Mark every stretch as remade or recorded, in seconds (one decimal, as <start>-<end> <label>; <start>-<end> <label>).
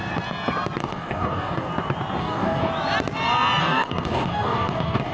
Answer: 0.0-0.8 recorded; 0.8-1.7 remade; 1.7-2.2 recorded; 2.2-2.7 remade; 2.7-3.6 recorded; 3.6-5.1 remade